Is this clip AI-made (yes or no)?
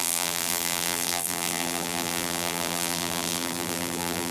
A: yes